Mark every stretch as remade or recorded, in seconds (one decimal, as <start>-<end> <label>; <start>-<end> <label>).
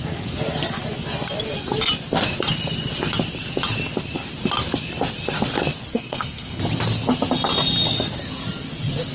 0.0-5.9 recorded; 5.9-6.6 remade; 6.6-9.1 recorded